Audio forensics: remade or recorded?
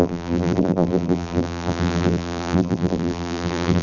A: remade